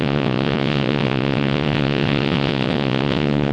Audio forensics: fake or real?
fake